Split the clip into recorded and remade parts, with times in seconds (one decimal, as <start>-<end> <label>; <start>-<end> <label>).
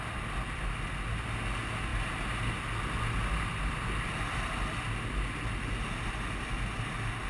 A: 0.0-7.3 recorded